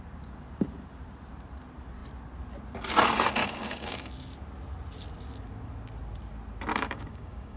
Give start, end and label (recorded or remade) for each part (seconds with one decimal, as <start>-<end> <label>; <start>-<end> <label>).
0.0-3.4 recorded; 3.4-4.1 remade; 4.1-6.7 recorded; 6.7-7.6 remade